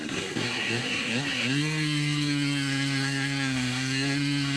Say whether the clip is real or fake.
fake